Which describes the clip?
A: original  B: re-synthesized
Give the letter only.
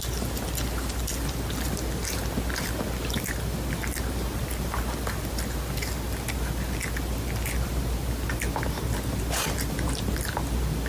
A